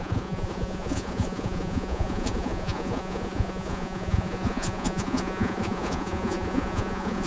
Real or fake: fake